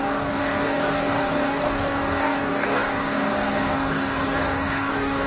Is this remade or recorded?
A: remade